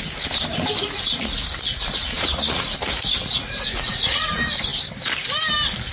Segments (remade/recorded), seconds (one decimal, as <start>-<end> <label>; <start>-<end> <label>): 0.0-0.8 recorded; 0.8-4.3 remade; 4.3-5.9 recorded